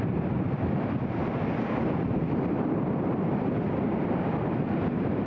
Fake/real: fake